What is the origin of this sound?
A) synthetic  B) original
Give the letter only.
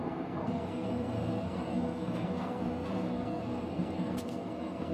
A